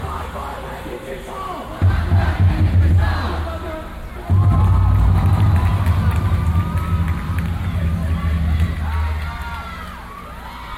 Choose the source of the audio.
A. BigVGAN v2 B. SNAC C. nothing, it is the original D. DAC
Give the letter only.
C